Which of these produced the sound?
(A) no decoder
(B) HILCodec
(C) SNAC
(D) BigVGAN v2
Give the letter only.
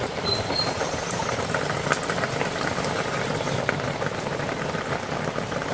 D